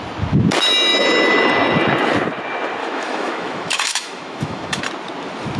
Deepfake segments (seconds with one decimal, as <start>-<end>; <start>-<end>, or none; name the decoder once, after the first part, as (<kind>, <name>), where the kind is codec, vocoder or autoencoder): 2.8-4.8 (autoencoder, DAC-VAE)